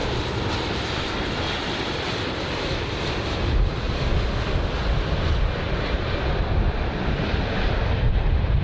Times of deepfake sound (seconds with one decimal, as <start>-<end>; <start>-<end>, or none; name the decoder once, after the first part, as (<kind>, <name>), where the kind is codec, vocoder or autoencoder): 0.0-4.1 (vocoder, BigVGAN v2); 8.1-8.6